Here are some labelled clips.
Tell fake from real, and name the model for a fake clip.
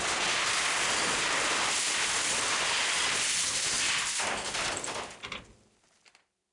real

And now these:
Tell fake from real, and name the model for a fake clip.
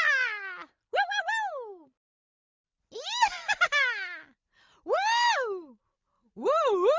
real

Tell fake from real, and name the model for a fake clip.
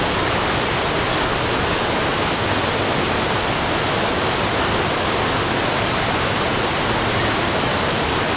real